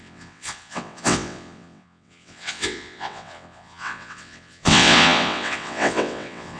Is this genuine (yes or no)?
no